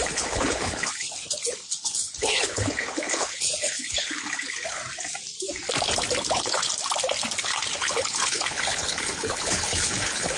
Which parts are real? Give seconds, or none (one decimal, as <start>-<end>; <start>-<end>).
4.8-6.3; 6.7-7.4